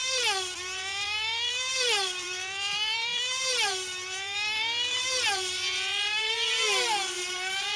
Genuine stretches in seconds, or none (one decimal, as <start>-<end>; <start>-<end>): 0.0-0.6